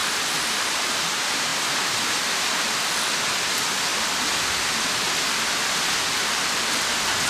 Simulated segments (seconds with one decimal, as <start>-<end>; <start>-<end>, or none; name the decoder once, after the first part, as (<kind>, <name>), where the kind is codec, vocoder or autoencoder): none